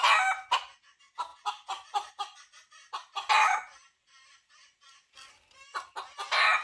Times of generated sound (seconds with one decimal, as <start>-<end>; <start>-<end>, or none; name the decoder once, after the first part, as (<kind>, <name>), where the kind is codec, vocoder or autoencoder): none